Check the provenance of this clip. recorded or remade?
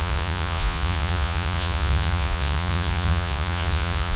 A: remade